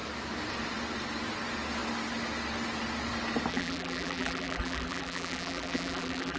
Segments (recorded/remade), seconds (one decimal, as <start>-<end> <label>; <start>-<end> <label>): 0.0-3.5 recorded; 3.5-6.4 remade